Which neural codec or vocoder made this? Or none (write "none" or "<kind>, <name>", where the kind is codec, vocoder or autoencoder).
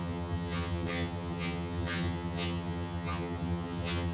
vocoder, HiFi-GAN